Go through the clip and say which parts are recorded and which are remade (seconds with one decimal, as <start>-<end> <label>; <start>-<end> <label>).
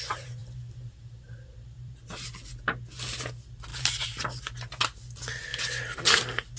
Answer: 0.0-0.4 recorded; 0.4-2.1 remade; 2.1-3.7 recorded; 3.7-4.8 remade; 4.8-6.6 recorded